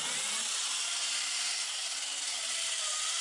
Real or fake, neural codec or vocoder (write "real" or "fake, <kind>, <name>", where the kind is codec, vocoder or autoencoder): real